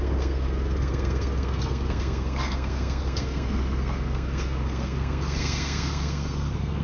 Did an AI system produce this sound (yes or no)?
yes